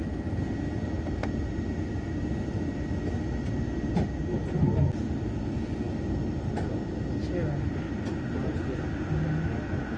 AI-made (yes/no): no